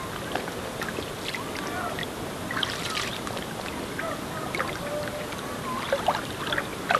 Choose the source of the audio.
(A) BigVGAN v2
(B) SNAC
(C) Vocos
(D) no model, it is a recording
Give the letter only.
D